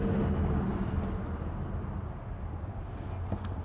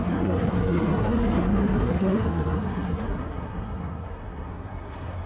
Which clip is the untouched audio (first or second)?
first